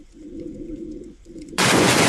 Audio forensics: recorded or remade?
remade